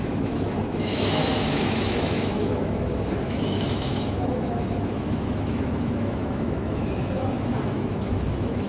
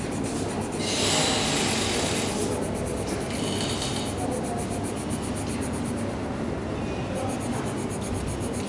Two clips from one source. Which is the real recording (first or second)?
second